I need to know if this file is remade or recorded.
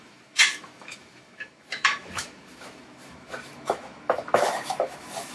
remade